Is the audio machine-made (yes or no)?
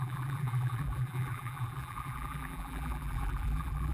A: yes